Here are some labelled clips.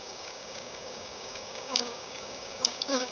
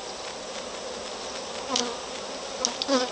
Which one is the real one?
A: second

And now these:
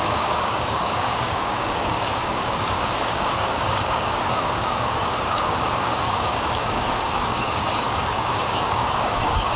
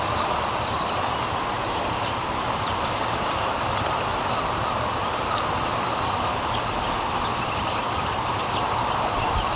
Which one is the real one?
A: second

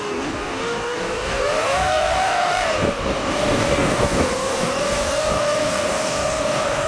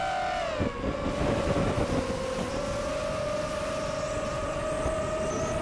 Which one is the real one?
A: second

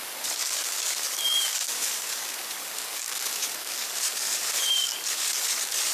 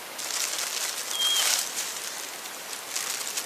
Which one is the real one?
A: second